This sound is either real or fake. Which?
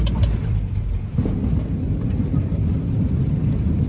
fake